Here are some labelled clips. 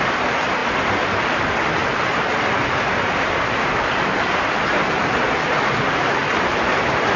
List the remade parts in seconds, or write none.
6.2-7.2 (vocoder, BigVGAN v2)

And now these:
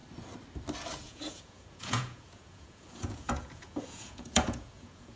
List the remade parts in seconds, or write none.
1.0-5.2 (vocoder, Vocos)

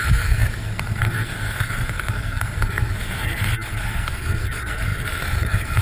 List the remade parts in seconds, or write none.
0.0-5.8 (codec, SNAC)

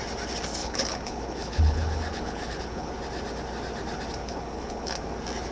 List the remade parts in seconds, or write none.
0.6-2.9 (codec, HILCodec); 4.2-5.0

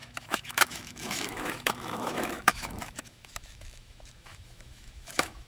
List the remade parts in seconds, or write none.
0.0-5.5 (autoencoder, DAC-VAE)